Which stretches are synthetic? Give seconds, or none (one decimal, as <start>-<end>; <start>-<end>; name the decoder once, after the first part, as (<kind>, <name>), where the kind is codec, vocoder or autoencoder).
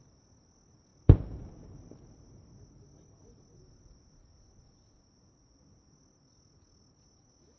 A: 0.9-1.5 (vocoder, BigVGAN v2)